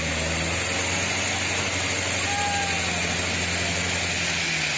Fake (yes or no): no